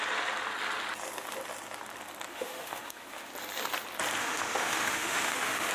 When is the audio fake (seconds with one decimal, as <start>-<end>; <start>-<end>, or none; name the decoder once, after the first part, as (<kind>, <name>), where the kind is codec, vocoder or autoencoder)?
2.3-3.3 (autoencoder, DAC-VAE); 4.2-5.7